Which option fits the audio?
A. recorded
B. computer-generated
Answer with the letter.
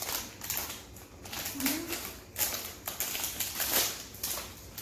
A